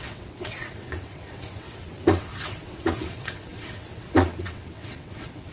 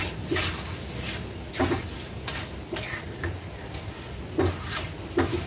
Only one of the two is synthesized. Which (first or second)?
first